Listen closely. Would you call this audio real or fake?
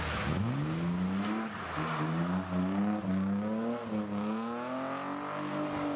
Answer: real